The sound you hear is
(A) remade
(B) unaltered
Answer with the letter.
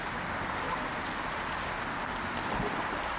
B